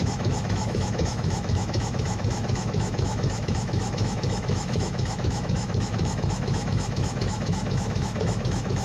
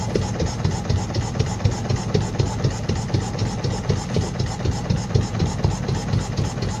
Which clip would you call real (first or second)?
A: second